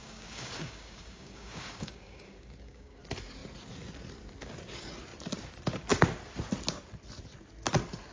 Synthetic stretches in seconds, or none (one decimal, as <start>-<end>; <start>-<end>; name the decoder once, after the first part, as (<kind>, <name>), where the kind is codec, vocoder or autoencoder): 0.0-3.0 (codec, DAC)